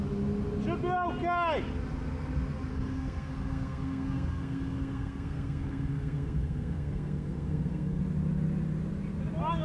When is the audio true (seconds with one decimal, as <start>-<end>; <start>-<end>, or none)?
0.0-2.7; 8.0-9.6